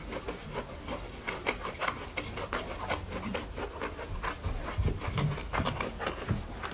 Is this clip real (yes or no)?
yes